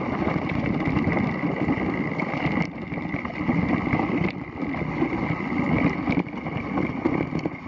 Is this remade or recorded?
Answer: recorded